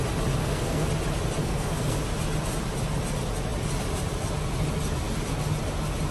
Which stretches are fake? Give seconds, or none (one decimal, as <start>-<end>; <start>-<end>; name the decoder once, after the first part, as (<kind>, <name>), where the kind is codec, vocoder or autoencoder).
0.4-0.9 (codec, SNAC); 1.4-2.0